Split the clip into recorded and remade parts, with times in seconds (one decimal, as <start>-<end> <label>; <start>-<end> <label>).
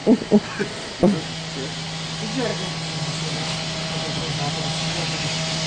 0.0-5.7 recorded